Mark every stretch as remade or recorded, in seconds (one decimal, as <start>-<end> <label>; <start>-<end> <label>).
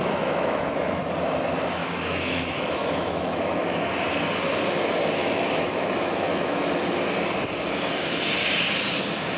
0.0-1.0 remade; 1.0-1.8 recorded; 1.8-3.9 remade; 3.9-5.2 recorded; 5.2-6.8 remade; 6.8-9.4 recorded